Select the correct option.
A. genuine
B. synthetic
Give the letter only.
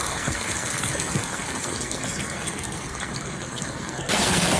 B